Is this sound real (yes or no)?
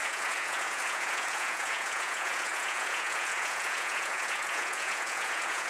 no